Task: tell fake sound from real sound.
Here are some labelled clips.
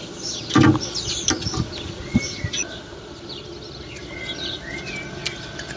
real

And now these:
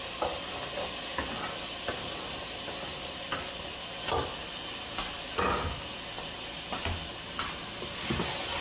real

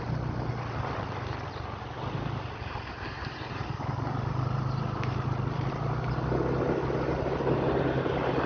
real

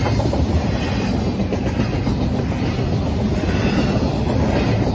real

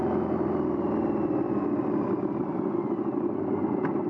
real